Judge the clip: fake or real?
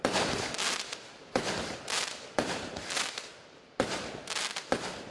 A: fake